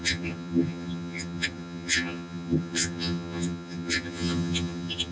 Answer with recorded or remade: remade